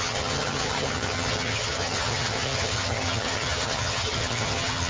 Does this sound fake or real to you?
fake